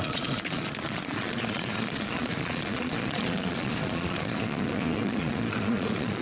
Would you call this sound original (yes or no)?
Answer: no